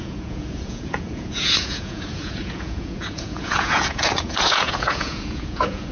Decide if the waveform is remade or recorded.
remade